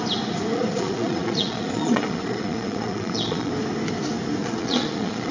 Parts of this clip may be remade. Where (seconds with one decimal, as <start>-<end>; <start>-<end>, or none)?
0.5-3.5; 4.4-5.3